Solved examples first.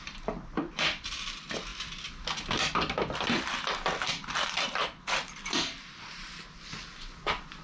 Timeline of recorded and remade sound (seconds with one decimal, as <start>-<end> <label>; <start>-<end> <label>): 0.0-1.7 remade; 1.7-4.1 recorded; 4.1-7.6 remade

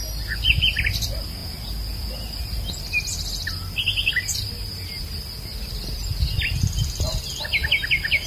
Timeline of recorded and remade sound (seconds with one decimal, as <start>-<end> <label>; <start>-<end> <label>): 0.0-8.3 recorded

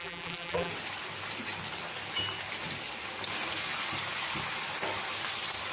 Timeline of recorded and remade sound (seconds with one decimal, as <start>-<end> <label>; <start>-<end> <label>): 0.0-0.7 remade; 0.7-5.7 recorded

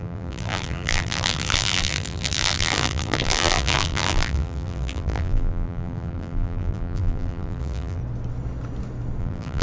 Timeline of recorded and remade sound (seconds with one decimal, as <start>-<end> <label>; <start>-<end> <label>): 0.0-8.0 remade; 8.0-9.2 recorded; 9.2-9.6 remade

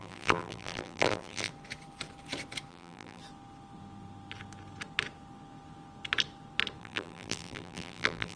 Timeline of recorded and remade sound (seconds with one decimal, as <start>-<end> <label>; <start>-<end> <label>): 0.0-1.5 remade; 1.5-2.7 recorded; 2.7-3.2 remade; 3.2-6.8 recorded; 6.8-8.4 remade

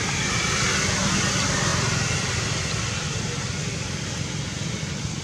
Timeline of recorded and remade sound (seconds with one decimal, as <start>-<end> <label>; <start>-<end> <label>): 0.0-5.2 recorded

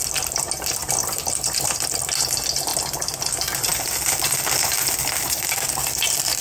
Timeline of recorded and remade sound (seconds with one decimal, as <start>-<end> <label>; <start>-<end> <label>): 0.0-6.4 remade